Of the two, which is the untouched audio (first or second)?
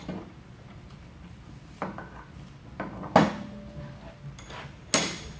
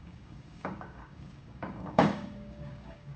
first